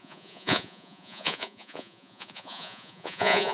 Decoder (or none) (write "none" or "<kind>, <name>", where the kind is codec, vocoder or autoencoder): vocoder, Vocos